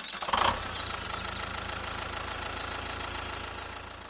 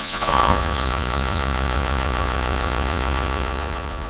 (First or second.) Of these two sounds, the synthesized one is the second